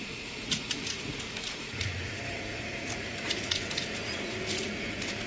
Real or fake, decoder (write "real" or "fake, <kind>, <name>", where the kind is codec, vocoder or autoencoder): fake, vocoder, Vocos